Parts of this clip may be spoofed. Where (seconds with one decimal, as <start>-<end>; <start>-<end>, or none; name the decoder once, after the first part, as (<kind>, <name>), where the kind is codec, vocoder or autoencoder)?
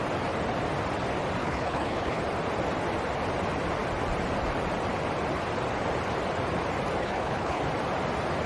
1.4-2.2 (codec, HILCodec); 7.0-7.6